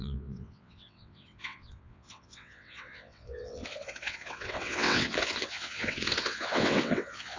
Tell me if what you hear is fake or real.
fake